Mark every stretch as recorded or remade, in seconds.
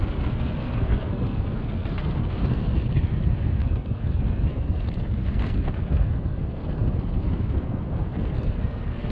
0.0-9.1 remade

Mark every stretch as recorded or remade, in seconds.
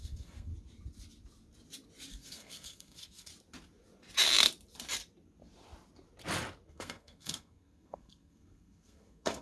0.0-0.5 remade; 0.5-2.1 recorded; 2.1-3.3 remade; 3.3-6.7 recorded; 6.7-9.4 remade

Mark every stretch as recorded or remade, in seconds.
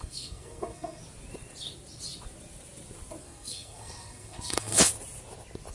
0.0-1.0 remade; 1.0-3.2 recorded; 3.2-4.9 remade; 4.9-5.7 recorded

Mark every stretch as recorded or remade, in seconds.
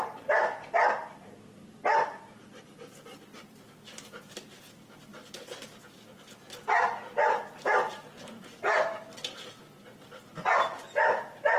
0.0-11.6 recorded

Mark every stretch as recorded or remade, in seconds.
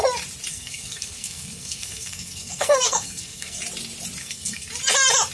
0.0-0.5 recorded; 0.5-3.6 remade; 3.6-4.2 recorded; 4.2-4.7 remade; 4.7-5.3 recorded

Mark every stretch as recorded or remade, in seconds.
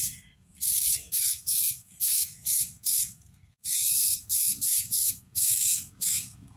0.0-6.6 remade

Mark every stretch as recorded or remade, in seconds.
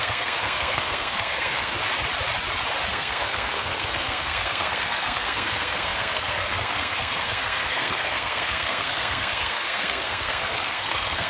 0.0-1.7 remade; 1.7-2.9 recorded; 2.9-11.3 remade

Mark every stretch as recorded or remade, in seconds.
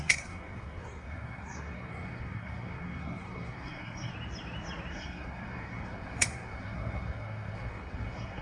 0.0-4.1 remade; 4.1-4.9 recorded; 4.9-8.4 remade